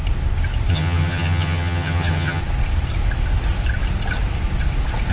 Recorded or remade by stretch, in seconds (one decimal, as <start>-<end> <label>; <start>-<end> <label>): 0.0-0.7 recorded; 0.7-2.4 remade; 2.4-5.1 recorded